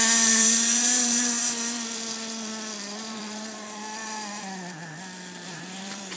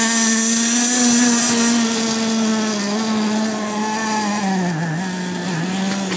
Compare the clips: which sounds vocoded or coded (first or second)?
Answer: first